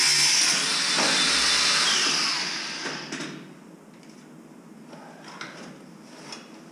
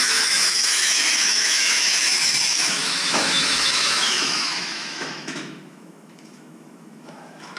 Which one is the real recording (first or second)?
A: first